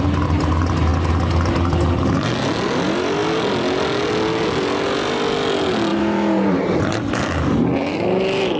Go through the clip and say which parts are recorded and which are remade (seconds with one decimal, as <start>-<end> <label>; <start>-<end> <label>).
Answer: 0.0-5.9 recorded; 5.9-6.8 remade; 6.8-8.6 recorded